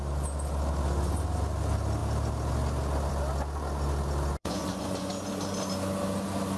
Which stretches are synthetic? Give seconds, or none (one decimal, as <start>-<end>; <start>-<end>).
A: 4.4-5.1